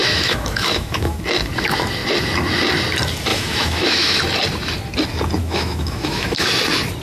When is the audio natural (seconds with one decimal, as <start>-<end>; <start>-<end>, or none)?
1.2-3.3; 4.2-5.4; 6.5-7.0